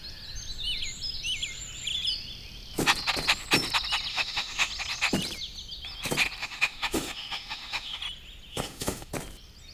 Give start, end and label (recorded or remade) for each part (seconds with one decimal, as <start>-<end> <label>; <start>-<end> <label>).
0.0-4.1 recorded; 4.1-4.7 remade; 4.7-6.4 recorded; 6.4-8.0 remade; 8.0-8.5 recorded; 8.5-9.1 remade; 9.1-9.7 recorded